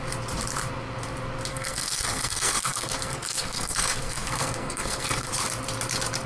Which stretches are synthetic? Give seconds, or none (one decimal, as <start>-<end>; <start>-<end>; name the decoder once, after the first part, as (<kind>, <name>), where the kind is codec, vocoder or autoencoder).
1.5-5.3 (codec, SNAC)